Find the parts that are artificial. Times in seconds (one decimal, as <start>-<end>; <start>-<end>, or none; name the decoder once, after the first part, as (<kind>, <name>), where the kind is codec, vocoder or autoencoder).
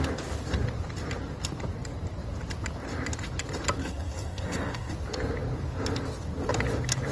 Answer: 3.8-4.9 (codec, SNAC)